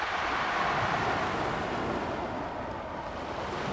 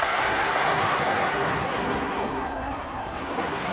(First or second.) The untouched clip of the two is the first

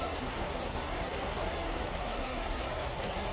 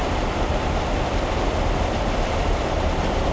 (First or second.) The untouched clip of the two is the second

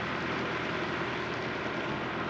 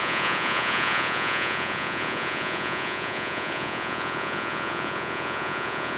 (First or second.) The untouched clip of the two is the first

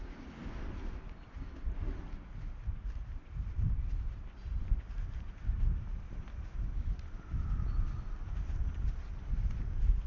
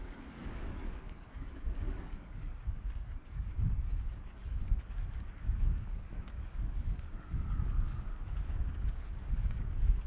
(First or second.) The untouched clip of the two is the first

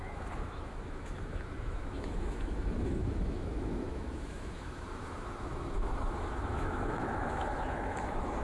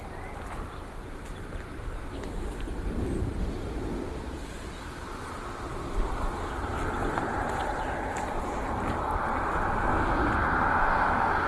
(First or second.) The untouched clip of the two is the second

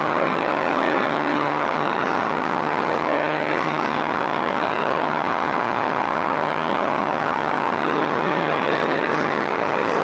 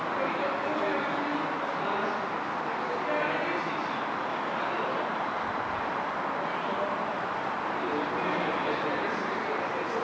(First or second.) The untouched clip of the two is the second